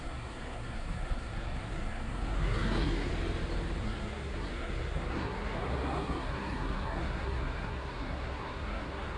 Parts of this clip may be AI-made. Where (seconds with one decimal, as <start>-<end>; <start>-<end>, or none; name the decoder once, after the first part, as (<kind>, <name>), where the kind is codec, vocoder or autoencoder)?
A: 0.0-3.1 (codec, SNAC); 3.8-9.2